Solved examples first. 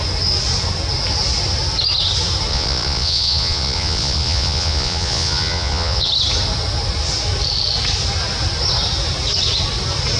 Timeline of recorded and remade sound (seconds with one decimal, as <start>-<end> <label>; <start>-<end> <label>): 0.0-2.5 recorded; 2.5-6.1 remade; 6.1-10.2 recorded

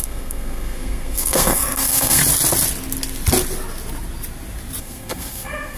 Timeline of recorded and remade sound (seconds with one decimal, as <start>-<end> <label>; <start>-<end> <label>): 0.0-2.2 remade; 2.2-4.8 recorded; 4.8-5.8 remade

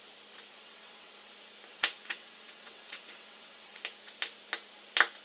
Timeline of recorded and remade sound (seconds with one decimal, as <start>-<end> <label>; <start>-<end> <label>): 0.0-0.5 recorded; 0.5-1.1 remade; 1.1-1.7 recorded; 1.7-3.8 remade; 3.8-5.2 recorded